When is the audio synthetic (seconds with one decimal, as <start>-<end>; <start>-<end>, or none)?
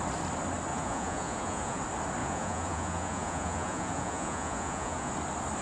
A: 0.7-1.8; 2.2-5.1